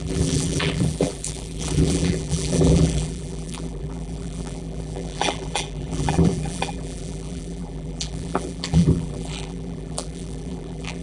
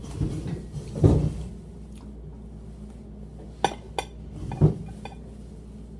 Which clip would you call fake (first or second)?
first